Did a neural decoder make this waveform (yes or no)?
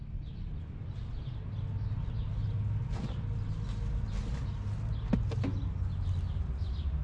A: no